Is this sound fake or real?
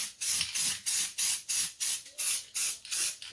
real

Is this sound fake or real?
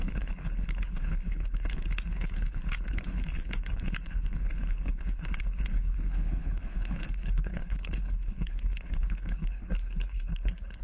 fake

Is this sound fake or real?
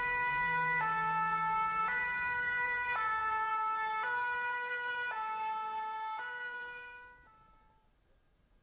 fake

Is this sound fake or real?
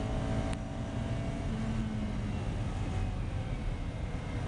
real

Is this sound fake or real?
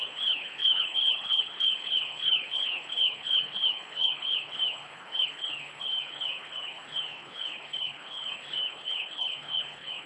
fake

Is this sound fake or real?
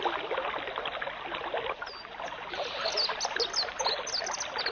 real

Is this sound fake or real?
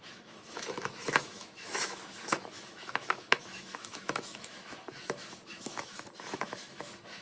fake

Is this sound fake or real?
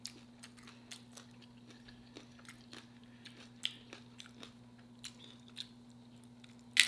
real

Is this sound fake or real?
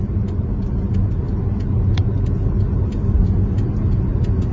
real